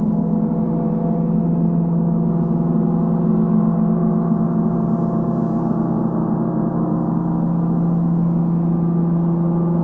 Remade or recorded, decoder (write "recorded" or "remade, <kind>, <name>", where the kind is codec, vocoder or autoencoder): recorded